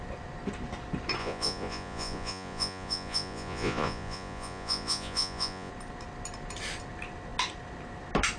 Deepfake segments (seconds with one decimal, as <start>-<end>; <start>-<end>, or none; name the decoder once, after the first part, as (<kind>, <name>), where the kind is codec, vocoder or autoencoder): 1.2-5.7 (vocoder, Vocos)